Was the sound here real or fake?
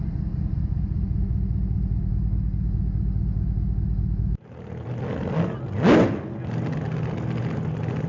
real